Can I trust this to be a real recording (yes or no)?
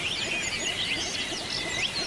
yes